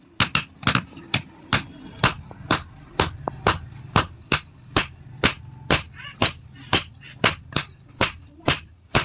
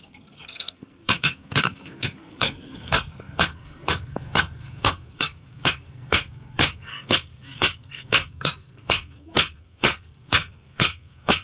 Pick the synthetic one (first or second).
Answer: second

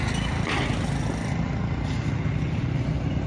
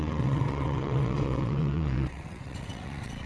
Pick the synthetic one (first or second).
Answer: second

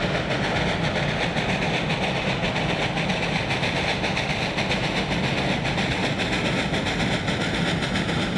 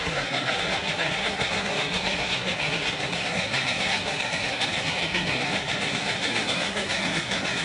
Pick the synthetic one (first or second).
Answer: second